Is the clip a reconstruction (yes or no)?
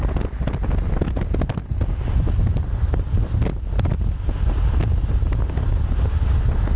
no